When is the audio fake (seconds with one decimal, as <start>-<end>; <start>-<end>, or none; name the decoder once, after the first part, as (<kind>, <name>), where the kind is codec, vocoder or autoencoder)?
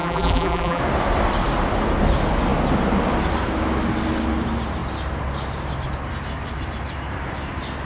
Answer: 0.0-0.8 (vocoder, BigVGAN v2)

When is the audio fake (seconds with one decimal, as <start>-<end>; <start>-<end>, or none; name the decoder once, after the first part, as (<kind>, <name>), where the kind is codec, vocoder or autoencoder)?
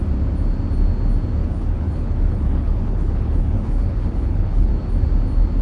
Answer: 1.4-4.7 (codec, HILCodec)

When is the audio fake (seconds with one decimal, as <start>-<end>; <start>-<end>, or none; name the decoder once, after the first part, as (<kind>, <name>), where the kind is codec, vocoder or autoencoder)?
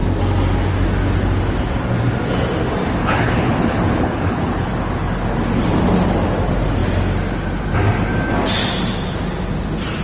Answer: 3.0-4.7 (codec, HILCodec)